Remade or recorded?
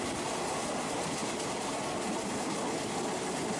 recorded